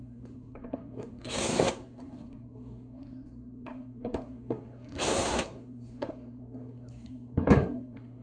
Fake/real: fake